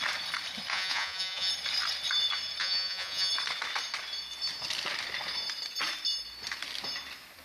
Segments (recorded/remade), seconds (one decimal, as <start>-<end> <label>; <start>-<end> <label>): 0.0-0.7 recorded; 0.7-1.5 remade; 1.5-2.6 recorded; 2.6-3.3 remade; 3.3-7.4 recorded